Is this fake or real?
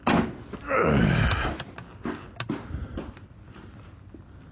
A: real